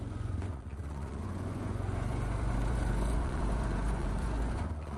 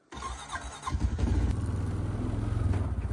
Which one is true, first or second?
second